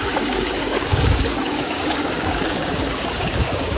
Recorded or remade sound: remade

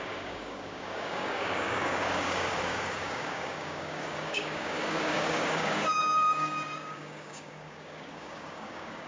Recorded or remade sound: remade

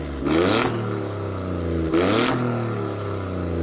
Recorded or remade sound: recorded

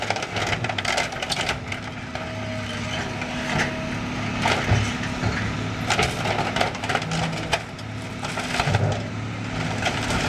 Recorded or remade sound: recorded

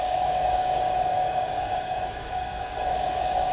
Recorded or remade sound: remade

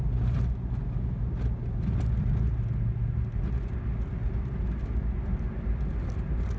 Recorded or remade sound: recorded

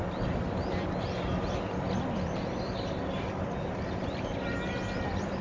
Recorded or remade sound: recorded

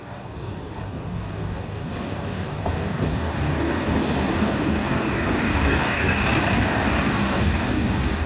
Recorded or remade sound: remade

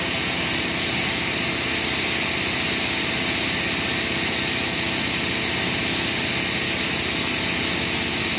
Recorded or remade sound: recorded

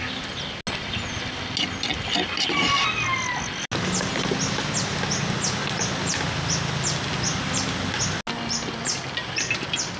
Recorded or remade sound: recorded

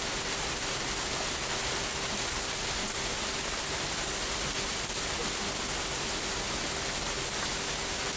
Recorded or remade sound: recorded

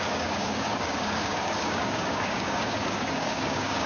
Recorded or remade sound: remade